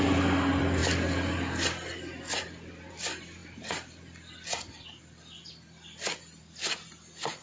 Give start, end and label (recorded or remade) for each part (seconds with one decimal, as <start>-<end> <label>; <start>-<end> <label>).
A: 0.0-7.4 recorded